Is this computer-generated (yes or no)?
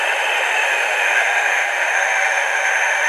yes